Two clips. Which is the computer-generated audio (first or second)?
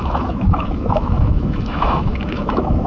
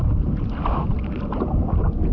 first